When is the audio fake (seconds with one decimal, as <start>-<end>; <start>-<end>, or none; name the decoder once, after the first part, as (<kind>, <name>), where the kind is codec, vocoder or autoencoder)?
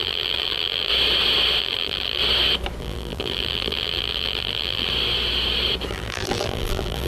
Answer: 0.0-0.9 (vocoder, BigVGAN v2); 1.6-2.2; 2.8-4.9; 5.9-7.1